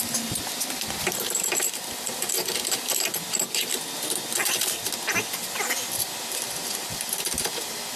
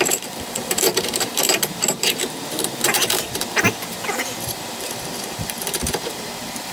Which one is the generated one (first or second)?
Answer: second